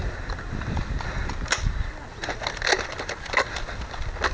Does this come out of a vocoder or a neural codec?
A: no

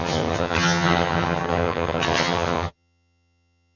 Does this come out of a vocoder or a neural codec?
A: yes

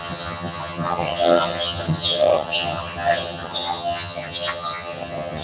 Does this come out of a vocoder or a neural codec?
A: yes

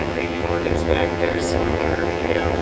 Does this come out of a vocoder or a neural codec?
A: yes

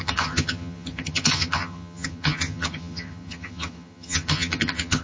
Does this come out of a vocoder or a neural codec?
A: yes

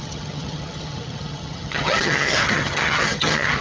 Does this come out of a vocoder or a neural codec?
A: yes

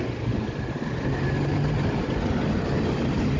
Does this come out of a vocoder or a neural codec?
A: no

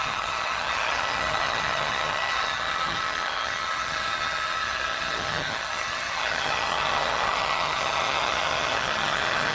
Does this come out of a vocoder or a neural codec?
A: yes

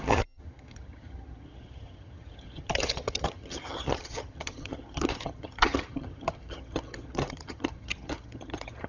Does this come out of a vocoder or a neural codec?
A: yes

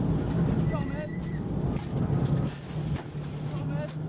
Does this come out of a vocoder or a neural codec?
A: no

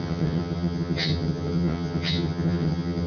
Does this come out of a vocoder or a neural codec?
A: yes